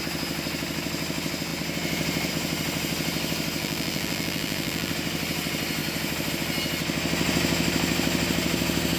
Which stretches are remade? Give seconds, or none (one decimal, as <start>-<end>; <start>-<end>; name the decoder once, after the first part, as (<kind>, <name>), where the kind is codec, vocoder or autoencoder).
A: 3.6-4.9 (vocoder, BigVGAN v2)